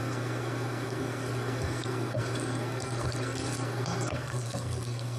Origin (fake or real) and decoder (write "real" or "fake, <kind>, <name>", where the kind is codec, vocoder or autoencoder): fake, codec, SNAC